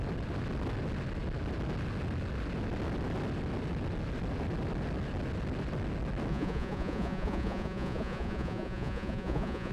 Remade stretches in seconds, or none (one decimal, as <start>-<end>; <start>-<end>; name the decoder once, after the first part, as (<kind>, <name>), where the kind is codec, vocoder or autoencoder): 6.3-9.7 (vocoder, Vocos)